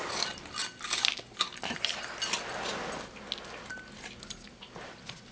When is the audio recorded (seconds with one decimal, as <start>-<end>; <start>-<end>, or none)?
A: 0.0-5.3